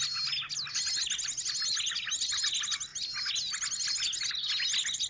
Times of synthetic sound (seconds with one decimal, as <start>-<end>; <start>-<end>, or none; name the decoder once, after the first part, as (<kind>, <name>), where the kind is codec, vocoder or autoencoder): none